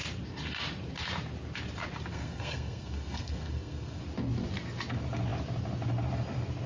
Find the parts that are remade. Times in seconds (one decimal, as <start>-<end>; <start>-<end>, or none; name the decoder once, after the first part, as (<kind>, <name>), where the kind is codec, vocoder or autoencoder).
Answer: 2.1-4.0 (codec, SNAC)